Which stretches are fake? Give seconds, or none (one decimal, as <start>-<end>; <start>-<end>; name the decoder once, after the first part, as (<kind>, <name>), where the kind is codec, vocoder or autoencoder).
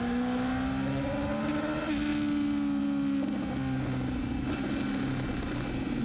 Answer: none